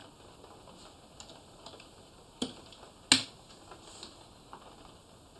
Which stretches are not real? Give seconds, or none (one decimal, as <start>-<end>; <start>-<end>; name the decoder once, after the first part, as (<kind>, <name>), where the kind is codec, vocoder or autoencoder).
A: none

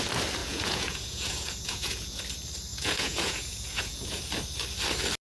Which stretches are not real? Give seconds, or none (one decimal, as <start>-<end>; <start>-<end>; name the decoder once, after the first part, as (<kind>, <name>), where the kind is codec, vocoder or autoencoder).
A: 0.4-2.2 (vocoder, Vocos); 2.7-4.2

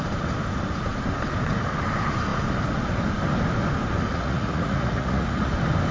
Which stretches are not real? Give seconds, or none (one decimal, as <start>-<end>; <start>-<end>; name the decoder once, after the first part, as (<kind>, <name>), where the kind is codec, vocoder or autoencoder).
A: 4.1-5.5 (vocoder, Vocos)

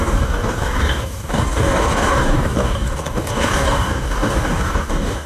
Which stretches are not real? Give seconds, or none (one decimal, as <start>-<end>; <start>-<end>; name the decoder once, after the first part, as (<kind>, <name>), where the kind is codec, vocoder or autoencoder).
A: 0.0-5.3 (codec, DAC)